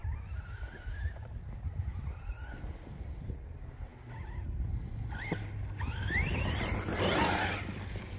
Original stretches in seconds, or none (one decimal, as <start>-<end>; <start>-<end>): 0.0-8.2